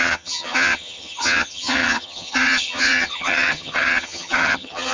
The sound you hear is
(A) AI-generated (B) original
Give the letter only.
A